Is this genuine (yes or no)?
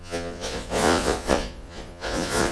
no